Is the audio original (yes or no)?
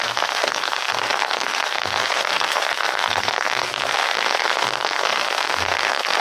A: no